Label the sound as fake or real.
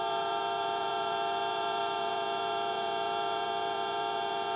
fake